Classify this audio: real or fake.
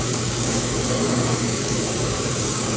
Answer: fake